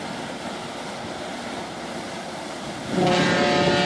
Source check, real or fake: real